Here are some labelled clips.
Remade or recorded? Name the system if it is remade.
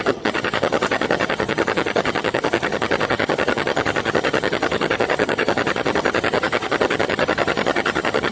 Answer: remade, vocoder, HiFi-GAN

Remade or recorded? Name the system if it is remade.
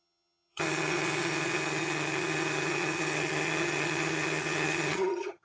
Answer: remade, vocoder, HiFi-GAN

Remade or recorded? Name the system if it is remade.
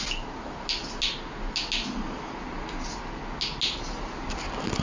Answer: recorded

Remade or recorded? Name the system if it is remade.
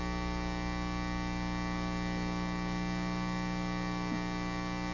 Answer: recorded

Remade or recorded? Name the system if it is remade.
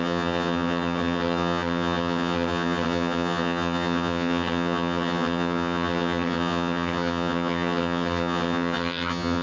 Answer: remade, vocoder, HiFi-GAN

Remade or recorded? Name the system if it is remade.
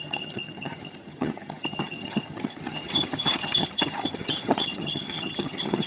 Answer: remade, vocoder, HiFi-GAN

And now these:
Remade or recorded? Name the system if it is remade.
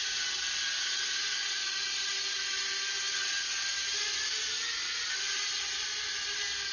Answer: recorded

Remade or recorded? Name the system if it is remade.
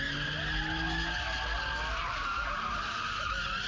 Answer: recorded